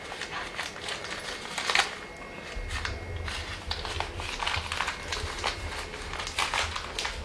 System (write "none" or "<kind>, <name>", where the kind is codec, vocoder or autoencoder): none